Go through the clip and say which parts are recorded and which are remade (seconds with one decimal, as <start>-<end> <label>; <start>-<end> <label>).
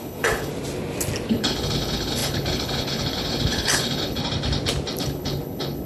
0.0-0.5 remade; 0.5-1.3 recorded; 1.3-4.2 remade; 4.2-5.0 recorded; 5.0-5.9 remade